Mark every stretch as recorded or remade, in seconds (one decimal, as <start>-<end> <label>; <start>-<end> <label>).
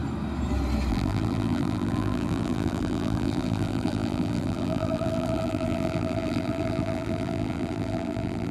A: 0.0-0.9 recorded; 0.9-8.5 remade